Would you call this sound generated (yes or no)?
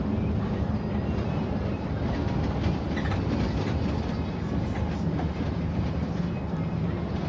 no